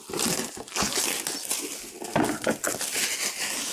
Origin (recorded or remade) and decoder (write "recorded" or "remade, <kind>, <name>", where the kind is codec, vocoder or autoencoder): recorded